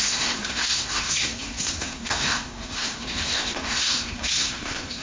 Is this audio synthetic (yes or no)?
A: yes